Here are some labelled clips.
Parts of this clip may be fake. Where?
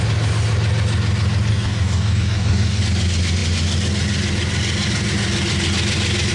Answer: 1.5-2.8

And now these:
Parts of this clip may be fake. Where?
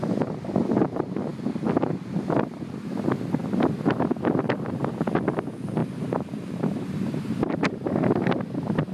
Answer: 1.3-2.9; 5.8-7.5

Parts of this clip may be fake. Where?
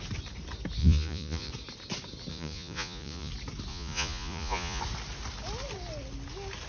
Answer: 0.8-1.5; 2.3-3.3; 3.7-4.8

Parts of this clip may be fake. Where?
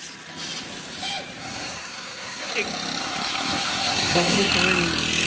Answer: 1.4-2.5; 3.0-4.5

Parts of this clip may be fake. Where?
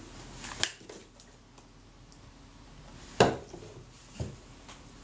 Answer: none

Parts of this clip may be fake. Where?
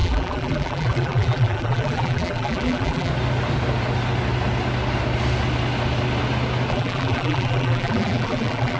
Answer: 0.0-3.1; 6.7-8.8